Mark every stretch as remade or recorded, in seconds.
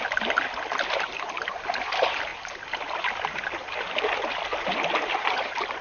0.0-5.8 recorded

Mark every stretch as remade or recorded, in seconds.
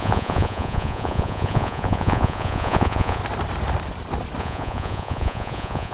0.0-3.2 remade; 3.2-4.4 recorded; 4.4-5.9 remade